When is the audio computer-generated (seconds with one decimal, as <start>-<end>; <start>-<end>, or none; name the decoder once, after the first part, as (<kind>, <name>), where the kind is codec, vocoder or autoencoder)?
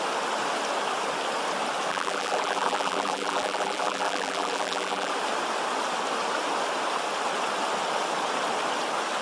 1.9-5.1 (vocoder, BigVGAN v2)